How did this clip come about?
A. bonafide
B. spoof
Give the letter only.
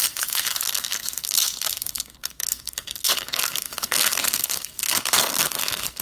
B